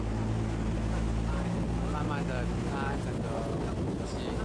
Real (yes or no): yes